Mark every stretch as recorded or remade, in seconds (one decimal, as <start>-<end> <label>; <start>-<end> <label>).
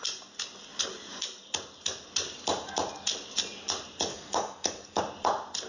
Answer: 0.0-4.1 recorded; 4.1-5.0 remade; 5.0-5.7 recorded